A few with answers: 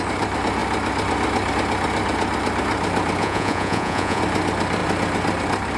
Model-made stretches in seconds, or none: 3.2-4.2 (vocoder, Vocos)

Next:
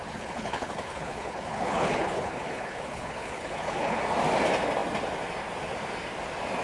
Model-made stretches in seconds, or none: 0.0-4.0 (codec, HILCodec)

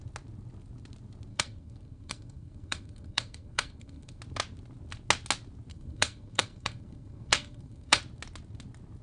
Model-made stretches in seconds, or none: 1.3-4.2 (codec, SNAC); 5.7-8.0